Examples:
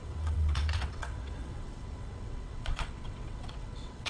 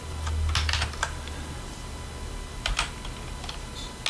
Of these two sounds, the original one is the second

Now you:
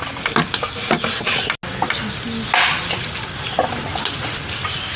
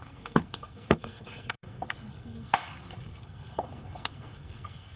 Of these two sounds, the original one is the first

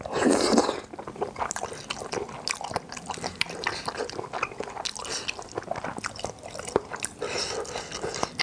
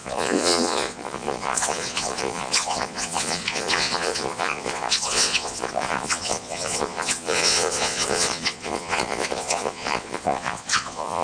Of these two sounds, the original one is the first